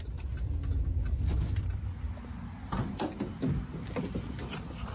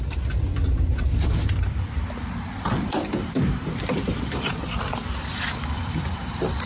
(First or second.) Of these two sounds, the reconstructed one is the second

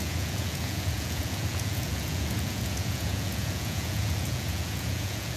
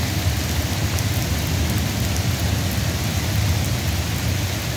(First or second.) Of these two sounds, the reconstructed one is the first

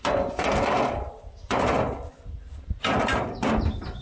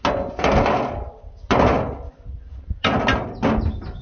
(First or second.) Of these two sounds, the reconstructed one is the first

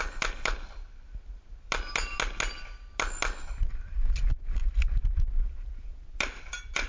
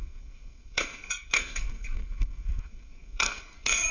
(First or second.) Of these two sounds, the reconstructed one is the second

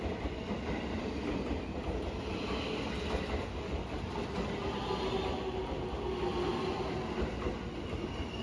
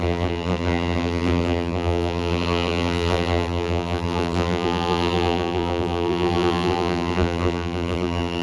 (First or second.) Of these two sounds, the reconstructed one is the second